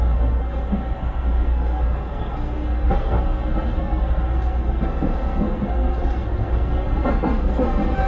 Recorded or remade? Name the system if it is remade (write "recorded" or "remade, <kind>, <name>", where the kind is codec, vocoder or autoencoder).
remade, codec, SNAC